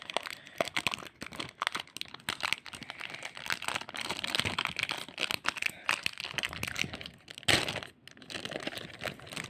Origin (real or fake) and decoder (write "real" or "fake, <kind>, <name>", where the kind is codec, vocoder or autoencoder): real